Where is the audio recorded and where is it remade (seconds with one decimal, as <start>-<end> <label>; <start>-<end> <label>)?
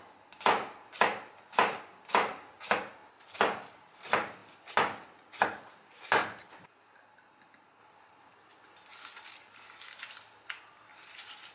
0.0-4.4 remade; 4.4-5.7 recorded; 5.7-6.2 remade; 6.2-7.8 recorded; 7.8-8.9 remade; 8.9-10.1 recorded; 10.1-11.5 remade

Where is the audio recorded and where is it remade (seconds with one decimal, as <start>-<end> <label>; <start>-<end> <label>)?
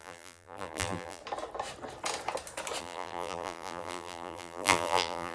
0.0-1.2 remade; 1.2-2.8 recorded; 2.8-5.3 remade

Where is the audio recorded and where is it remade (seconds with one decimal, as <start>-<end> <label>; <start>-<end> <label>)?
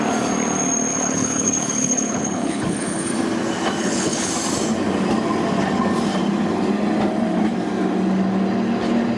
0.0-0.9 recorded; 0.9-3.1 remade; 3.1-3.8 recorded; 3.8-4.3 remade; 4.3-9.2 recorded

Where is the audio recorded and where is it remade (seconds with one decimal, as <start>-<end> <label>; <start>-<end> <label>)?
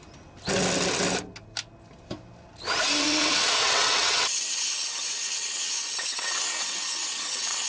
0.0-3.0 recorded; 3.0-7.7 remade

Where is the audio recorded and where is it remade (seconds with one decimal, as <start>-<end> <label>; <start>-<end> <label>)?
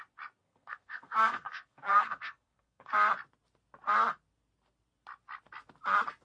0.0-0.4 recorded; 0.4-2.9 remade; 2.9-6.2 recorded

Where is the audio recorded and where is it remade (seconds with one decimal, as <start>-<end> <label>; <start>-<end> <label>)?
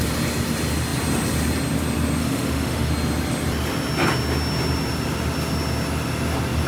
0.0-2.2 recorded; 2.2-2.9 remade; 2.9-6.7 recorded